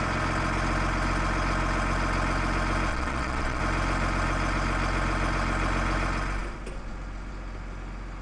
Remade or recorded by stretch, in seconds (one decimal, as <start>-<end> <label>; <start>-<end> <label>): 0.0-2.9 recorded; 2.9-3.6 remade; 3.6-8.2 recorded